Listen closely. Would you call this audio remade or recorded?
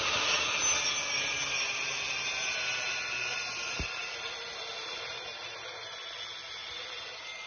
recorded